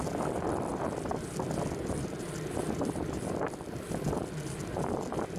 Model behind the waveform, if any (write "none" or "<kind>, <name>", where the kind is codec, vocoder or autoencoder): vocoder, BigVGAN v2